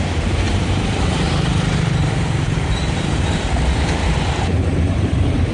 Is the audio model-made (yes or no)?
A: yes